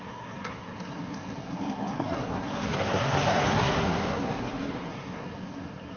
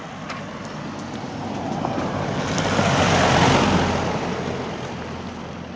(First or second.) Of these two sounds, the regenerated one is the first